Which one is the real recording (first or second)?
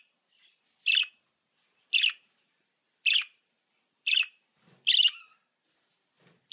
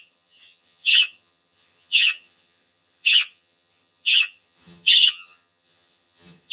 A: first